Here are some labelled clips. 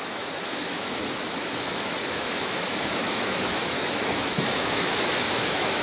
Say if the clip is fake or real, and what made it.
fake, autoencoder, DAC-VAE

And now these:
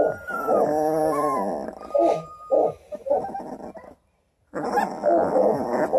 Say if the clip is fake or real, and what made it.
real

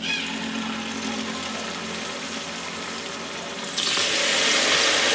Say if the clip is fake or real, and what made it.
real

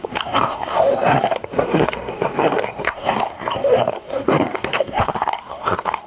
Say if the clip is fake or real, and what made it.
fake, codec, SNAC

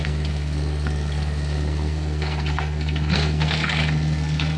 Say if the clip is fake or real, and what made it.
fake, codec, SNAC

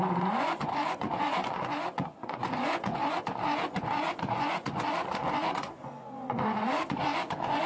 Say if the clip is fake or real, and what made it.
fake, vocoder, Vocos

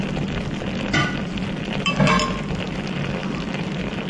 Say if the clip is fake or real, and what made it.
real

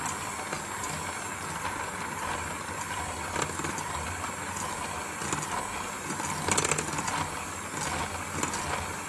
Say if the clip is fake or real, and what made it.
real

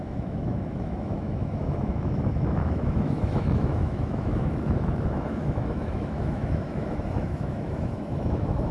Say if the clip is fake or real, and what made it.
fake, autoencoder, DAC-VAE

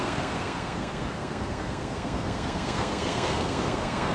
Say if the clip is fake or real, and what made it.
fake, codec, SNAC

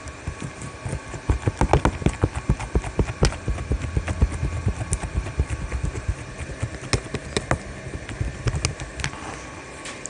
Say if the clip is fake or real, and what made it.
real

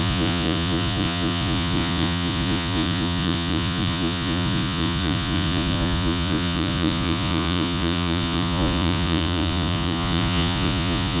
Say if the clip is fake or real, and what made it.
fake, vocoder, Vocos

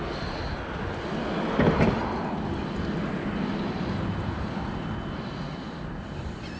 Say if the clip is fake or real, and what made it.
real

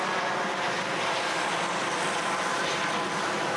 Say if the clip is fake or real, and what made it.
real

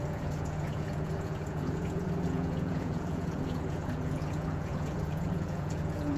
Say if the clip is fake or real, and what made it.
fake, vocoder, Vocos